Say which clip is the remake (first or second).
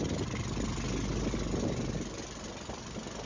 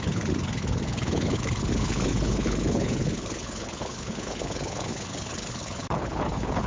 second